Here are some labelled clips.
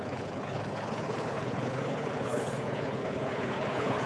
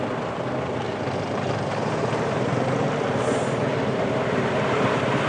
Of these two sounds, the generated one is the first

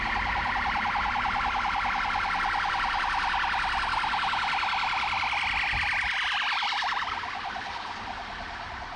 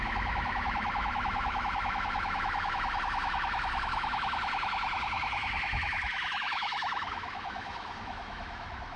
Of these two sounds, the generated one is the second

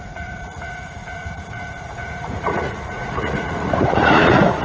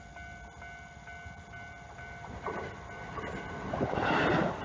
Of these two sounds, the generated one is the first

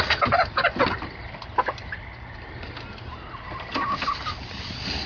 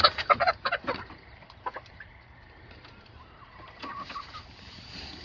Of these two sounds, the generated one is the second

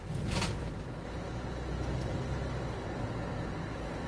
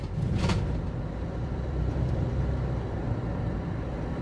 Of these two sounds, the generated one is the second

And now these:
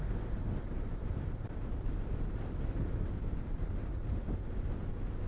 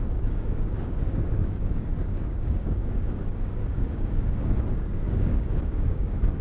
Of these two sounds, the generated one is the second